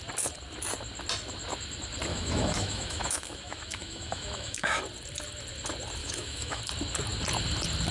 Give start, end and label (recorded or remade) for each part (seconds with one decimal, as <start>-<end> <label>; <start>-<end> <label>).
0.0-2.1 recorded; 2.1-4.8 remade; 4.8-6.0 recorded; 6.0-6.6 remade; 6.6-7.9 recorded